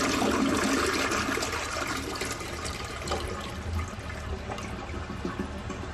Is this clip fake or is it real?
real